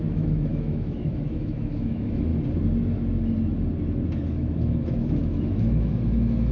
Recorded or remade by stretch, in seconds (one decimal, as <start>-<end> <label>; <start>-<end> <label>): 0.0-2.3 remade; 2.3-4.1 recorded; 4.1-6.5 remade